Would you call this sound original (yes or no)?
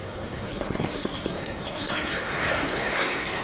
no